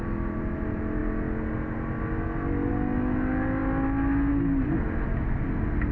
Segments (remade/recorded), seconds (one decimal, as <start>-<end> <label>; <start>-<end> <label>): 0.0-5.9 recorded